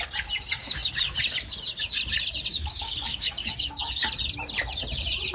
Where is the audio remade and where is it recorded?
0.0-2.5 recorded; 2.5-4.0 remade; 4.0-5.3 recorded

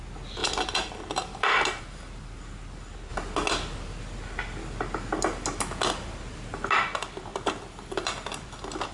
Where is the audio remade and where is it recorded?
0.0-0.4 recorded; 0.4-1.8 remade; 1.8-7.3 recorded; 7.3-8.9 remade

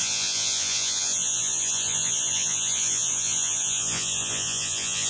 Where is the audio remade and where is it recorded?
0.0-5.1 remade

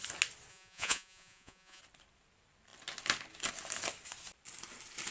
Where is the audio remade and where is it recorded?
0.0-0.5 recorded; 0.5-1.8 remade; 1.8-5.1 recorded

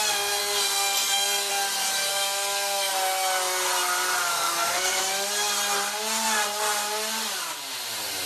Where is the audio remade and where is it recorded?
0.0-0.4 recorded; 0.4-1.5 remade; 1.5-2.1 recorded; 2.1-2.9 remade; 2.9-4.3 recorded; 4.3-5.0 remade; 5.0-8.3 recorded

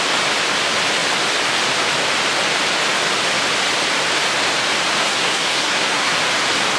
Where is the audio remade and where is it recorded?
0.0-5.0 recorded; 5.0-6.1 remade; 6.1-6.8 recorded